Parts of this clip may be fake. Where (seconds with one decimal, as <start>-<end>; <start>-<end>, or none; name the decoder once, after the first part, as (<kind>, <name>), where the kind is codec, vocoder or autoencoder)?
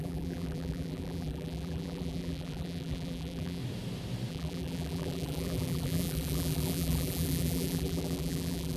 0.0-3.6 (vocoder, BigVGAN v2); 4.3-8.8